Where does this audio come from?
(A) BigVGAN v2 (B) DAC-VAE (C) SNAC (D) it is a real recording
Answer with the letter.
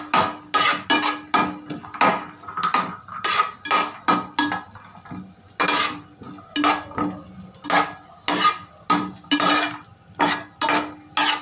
D